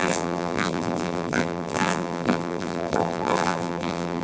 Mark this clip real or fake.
fake